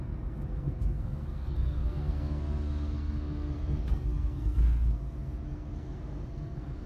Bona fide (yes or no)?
no